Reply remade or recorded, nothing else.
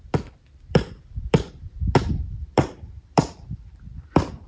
remade